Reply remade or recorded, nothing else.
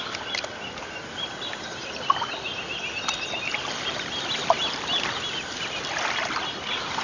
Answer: recorded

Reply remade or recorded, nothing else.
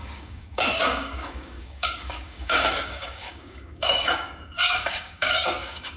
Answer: remade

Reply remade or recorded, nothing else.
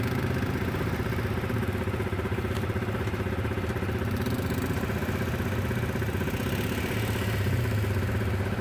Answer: recorded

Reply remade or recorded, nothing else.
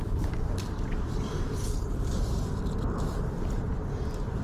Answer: remade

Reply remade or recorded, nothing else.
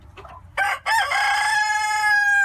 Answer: recorded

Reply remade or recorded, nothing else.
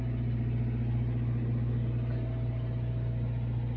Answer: recorded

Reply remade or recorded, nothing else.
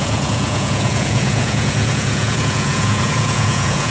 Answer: remade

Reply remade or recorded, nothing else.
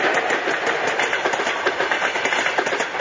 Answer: recorded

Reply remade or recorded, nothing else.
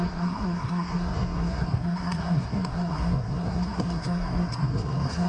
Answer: remade